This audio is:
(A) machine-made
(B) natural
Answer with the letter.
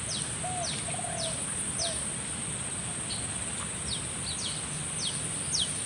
B